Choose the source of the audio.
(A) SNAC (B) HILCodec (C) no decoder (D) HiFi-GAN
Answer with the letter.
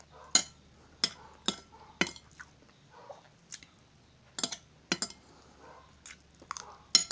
C